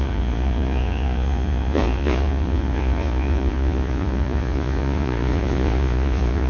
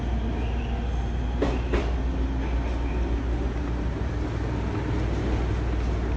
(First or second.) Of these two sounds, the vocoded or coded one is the first